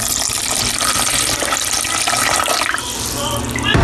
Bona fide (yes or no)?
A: yes